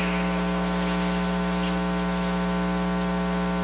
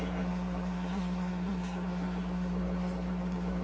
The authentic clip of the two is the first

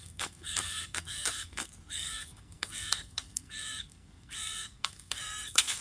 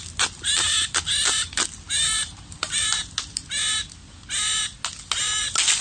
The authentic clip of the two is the second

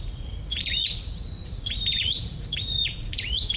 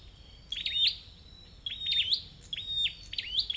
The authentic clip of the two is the second